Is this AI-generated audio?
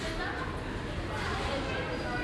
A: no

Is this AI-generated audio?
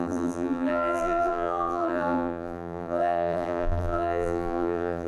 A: yes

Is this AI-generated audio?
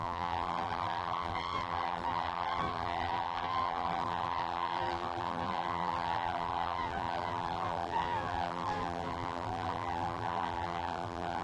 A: yes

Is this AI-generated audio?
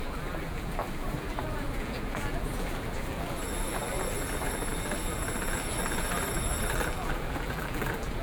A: yes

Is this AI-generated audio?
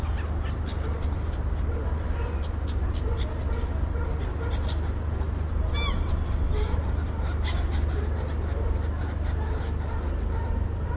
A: no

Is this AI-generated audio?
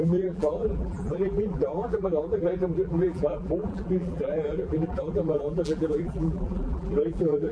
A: yes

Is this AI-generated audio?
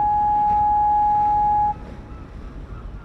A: no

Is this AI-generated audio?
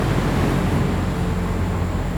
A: no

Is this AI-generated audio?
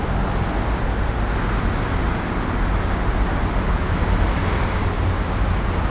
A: no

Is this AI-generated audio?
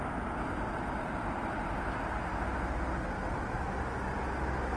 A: no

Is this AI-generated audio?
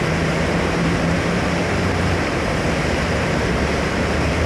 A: yes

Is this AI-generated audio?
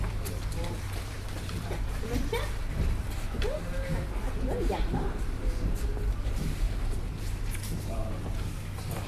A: yes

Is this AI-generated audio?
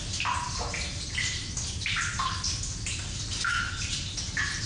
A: no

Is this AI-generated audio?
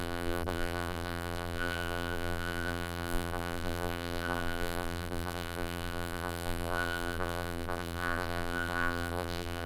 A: yes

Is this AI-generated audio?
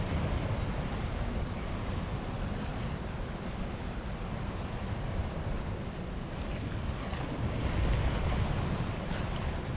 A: no